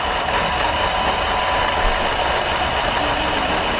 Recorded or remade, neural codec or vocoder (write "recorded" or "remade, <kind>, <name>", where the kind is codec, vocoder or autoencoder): recorded